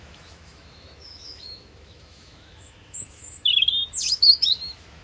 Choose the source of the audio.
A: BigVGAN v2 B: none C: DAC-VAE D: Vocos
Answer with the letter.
C